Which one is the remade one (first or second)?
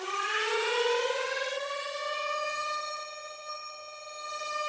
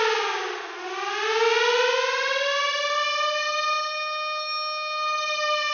first